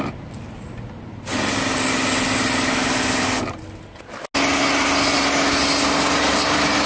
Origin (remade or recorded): recorded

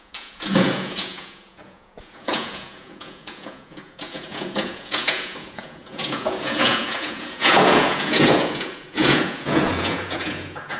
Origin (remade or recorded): remade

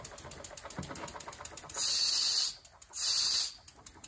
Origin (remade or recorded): recorded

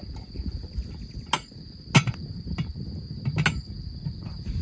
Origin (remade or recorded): recorded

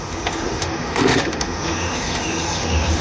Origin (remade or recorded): remade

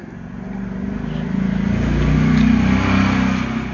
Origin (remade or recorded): recorded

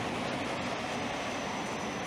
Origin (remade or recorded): recorded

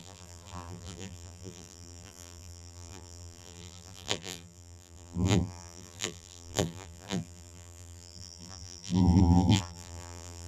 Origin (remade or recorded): remade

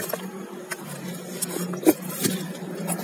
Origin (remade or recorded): recorded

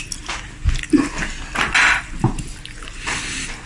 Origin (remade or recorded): recorded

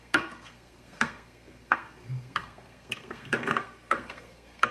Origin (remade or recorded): remade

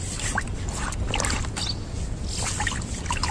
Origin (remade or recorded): recorded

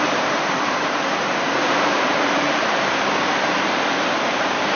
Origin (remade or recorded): remade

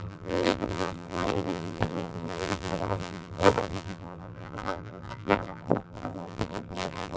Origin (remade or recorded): remade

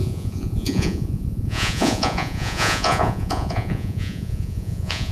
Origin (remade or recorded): remade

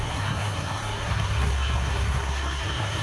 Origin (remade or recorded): remade